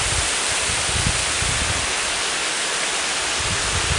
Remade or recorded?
recorded